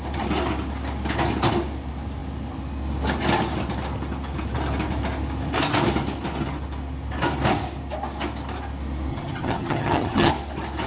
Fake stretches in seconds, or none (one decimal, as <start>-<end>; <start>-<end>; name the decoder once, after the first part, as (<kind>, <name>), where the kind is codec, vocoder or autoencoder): 9.1-10.3 (vocoder, HiFi-GAN)